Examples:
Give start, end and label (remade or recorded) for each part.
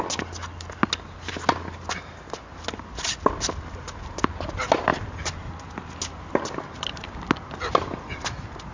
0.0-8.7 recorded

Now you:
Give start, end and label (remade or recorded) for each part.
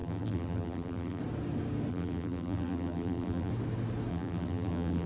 0.0-1.2 remade; 1.2-1.9 recorded; 1.9-3.5 remade; 3.5-4.1 recorded; 4.1-5.1 remade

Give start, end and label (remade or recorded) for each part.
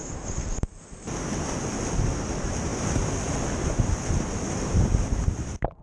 0.0-5.8 recorded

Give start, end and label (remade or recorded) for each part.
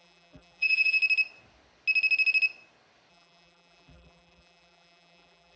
0.0-1.0 remade; 1.0-3.1 recorded; 3.1-5.6 remade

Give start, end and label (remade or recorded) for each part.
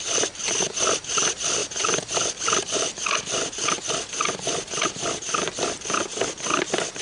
0.0-7.0 recorded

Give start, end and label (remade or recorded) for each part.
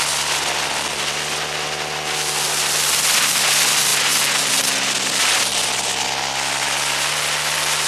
0.0-7.9 recorded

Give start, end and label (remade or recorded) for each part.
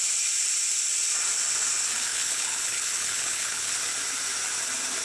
0.0-2.1 recorded; 2.1-3.7 remade; 3.7-5.0 recorded